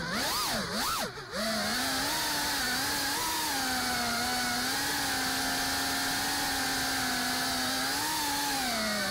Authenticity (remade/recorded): recorded